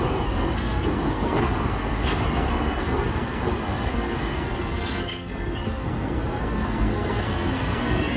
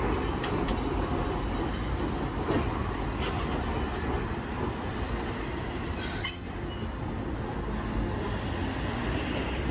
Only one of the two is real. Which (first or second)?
second